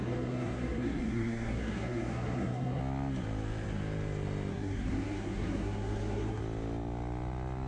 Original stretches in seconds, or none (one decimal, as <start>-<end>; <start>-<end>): 2.8-4.5; 6.4-7.7